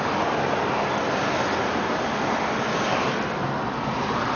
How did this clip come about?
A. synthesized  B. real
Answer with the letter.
B